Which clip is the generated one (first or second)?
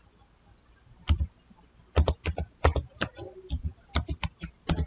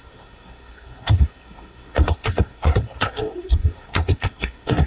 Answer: second